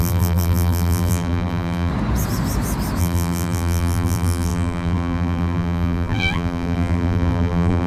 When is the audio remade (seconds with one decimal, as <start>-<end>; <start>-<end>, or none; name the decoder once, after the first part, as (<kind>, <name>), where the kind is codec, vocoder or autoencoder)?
0.0-1.9 (vocoder, BigVGAN v2); 3.0-7.9